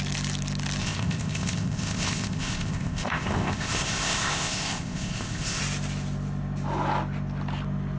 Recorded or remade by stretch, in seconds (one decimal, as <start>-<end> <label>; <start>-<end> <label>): 0.0-0.8 recorded; 0.8-5.6 remade; 5.6-8.0 recorded